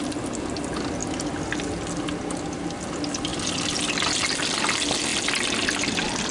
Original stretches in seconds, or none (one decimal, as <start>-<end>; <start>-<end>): 0.0-6.3